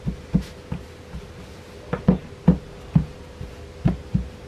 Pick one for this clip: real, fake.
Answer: real